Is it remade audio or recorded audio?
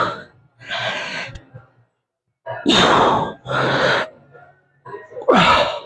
recorded